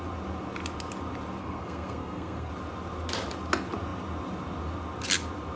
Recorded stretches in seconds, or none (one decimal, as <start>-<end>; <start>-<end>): 0.0-1.4; 2.5-5.6